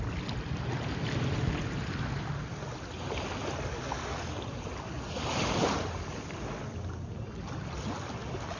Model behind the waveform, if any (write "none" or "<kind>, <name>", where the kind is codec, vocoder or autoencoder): none